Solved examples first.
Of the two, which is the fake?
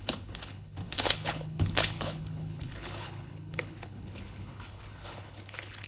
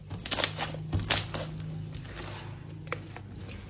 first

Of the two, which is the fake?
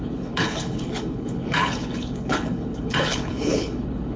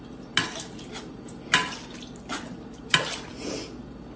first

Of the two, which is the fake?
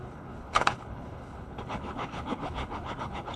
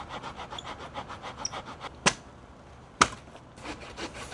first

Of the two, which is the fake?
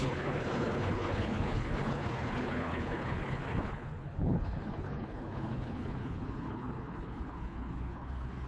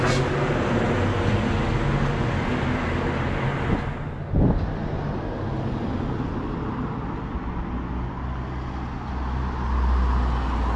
first